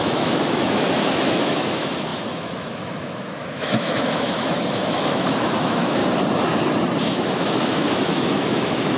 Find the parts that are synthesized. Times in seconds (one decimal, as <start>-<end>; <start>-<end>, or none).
0.0-6.0; 7.0-9.0